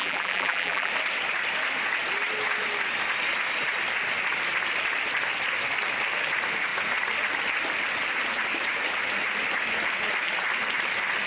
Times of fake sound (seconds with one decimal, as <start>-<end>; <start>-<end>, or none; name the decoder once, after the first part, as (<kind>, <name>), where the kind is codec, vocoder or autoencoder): 0.0-0.9 (vocoder, BigVGAN v2)